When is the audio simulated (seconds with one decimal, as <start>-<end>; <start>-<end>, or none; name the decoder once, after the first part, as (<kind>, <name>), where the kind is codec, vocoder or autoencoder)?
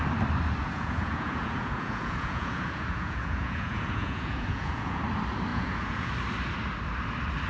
0.6-5.0 (vocoder, Vocos); 5.5-6.1